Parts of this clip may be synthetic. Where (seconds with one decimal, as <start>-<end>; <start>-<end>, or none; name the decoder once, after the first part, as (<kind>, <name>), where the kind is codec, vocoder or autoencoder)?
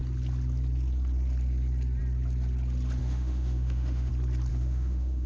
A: 3.0-4.1 (autoencoder, DAC-VAE); 4.5-5.3